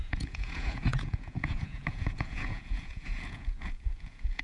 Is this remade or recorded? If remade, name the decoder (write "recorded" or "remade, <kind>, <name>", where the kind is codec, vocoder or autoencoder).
remade, vocoder, Vocos